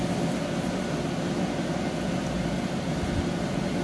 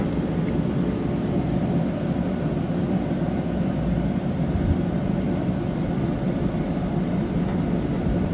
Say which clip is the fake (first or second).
second